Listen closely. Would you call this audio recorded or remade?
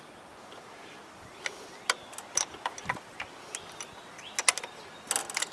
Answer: recorded